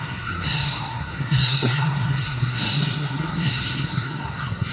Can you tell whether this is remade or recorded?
remade